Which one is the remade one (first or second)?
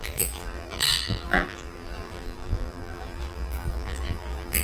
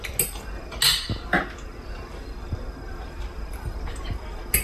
first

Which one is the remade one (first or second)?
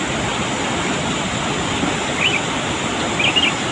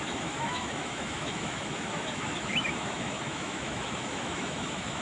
second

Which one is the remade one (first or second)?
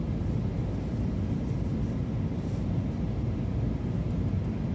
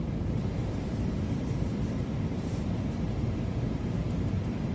second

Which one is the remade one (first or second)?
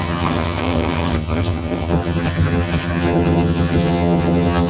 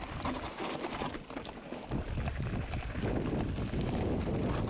first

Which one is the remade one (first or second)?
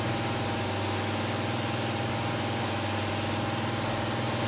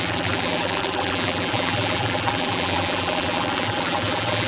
second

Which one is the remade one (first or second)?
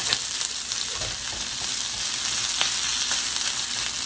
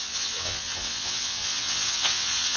second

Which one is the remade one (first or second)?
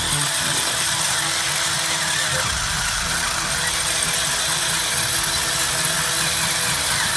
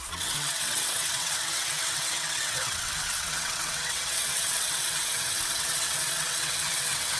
second